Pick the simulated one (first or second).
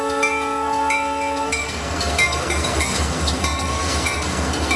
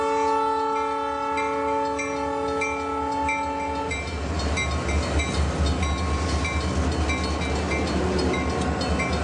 first